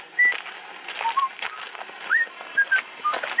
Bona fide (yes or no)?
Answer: yes